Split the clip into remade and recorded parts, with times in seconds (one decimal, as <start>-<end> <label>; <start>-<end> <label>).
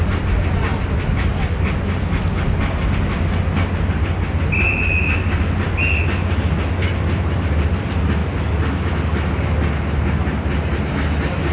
0.0-11.5 recorded